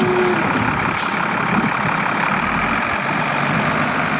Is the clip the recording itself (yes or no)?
yes